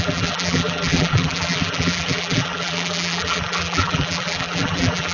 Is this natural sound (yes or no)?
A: no